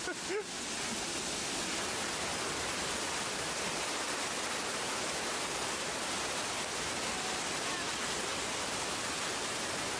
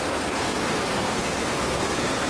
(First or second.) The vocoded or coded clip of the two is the second